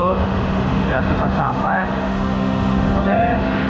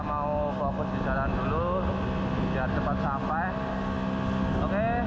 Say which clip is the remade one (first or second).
first